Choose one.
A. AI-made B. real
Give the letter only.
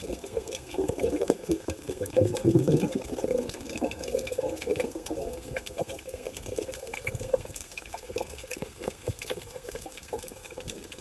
A